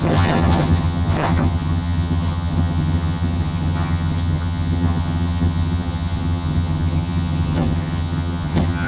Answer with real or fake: fake